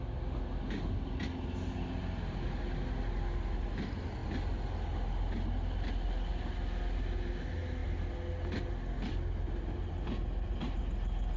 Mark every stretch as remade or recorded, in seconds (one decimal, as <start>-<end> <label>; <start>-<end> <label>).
0.0-11.4 recorded